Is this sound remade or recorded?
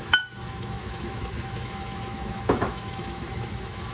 remade